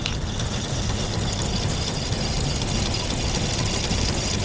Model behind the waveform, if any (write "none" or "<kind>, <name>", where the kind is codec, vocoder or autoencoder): none